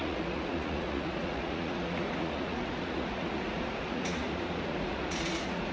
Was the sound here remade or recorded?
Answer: remade